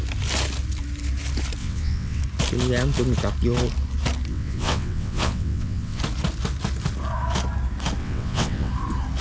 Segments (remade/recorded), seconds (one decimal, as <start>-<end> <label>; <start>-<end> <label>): 0.0-1.6 recorded; 1.6-2.2 remade; 2.2-4.3 recorded; 4.3-6.0 remade; 6.0-8.0 recorded; 8.0-8.7 remade; 8.7-9.2 recorded

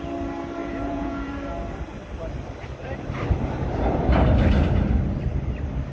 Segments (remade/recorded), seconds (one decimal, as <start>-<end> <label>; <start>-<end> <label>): 0.0-0.6 recorded; 0.6-1.3 remade; 1.3-5.9 recorded

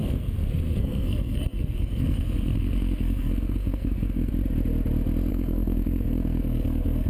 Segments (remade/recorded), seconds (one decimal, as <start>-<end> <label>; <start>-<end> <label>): 0.0-4.3 remade; 4.3-5.3 recorded; 5.3-7.1 remade

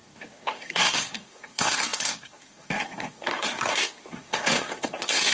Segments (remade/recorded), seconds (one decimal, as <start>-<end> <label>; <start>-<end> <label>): 0.0-5.3 remade

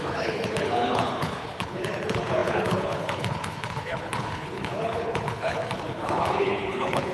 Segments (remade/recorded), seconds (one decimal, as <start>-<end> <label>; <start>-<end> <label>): 0.0-7.1 remade

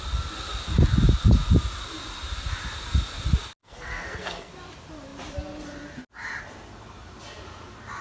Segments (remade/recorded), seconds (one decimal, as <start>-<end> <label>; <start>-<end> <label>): 0.0-3.6 recorded; 3.6-4.5 remade; 4.5-8.0 recorded